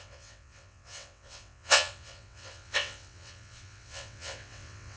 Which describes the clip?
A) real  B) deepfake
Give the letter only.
B